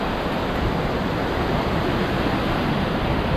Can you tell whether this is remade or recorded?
recorded